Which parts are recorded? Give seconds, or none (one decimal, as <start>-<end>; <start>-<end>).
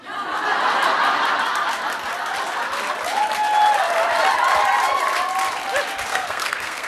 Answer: 0.0-6.1